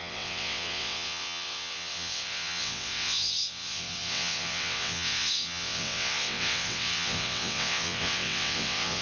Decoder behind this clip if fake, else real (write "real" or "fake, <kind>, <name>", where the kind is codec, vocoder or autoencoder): fake, vocoder, WaveNeXt